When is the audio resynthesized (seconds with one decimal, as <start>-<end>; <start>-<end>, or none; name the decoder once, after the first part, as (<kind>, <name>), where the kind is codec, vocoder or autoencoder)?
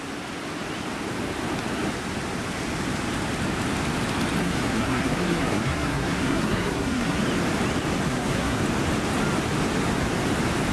4.4-7.2 (codec, SNAC); 8.1-8.6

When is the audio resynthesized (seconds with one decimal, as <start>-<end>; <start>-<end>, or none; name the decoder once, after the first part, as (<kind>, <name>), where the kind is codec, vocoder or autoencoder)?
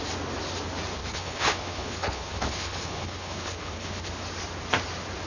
0.9-4.1 (codec, HILCodec)